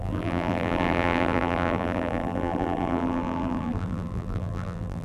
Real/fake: fake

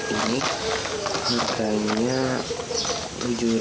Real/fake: real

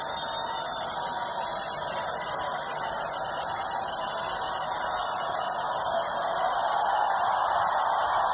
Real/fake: real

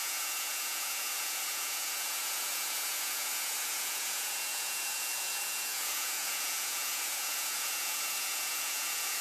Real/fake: fake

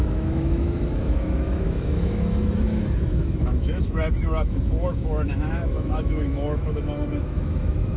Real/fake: fake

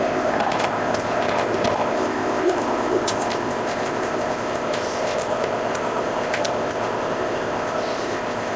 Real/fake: fake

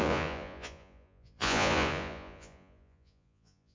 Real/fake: fake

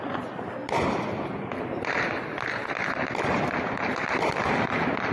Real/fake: real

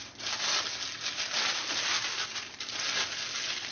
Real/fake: real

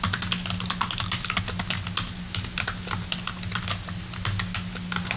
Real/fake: real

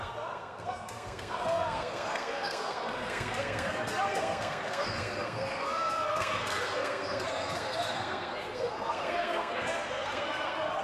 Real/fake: fake